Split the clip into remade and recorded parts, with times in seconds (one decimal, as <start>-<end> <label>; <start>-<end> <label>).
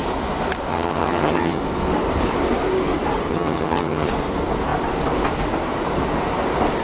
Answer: 0.0-0.7 recorded; 0.7-1.6 remade; 1.6-3.3 recorded; 3.3-4.1 remade; 4.1-6.8 recorded